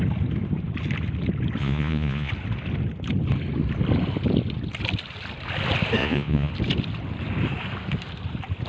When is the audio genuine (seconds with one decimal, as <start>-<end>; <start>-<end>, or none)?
0.0-1.6; 2.3-6.0; 6.5-8.7